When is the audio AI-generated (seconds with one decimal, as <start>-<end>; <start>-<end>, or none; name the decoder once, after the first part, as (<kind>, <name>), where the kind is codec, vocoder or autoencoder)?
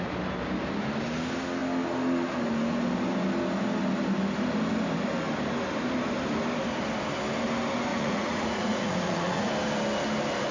7.9-9.5 (vocoder, Vocos)